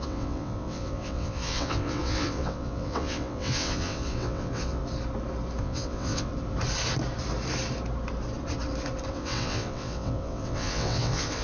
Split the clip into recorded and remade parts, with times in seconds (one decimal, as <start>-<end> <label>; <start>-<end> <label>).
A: 0.0-4.8 remade; 4.8-5.6 recorded; 5.6-6.3 remade; 6.3-9.1 recorded; 9.1-11.4 remade